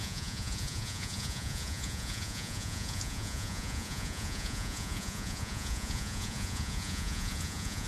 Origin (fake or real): fake